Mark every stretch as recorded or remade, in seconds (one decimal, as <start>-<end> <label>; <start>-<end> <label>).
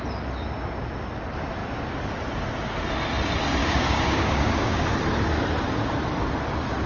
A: 0.0-3.6 recorded; 3.6-4.9 remade; 4.9-6.9 recorded